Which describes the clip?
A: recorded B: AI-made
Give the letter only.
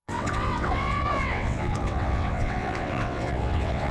B